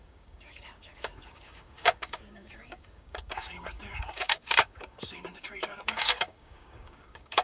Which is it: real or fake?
fake